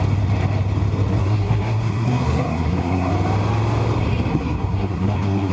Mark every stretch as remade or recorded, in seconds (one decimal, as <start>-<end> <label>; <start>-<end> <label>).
0.0-1.2 recorded; 1.2-3.1 remade; 3.1-4.3 recorded; 4.3-5.5 remade